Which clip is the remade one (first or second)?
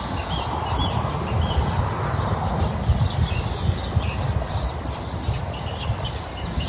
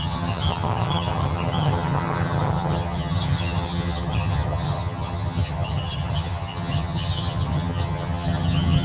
second